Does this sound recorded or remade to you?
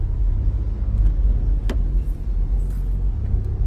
recorded